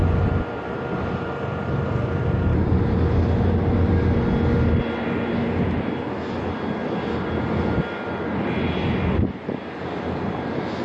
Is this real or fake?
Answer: real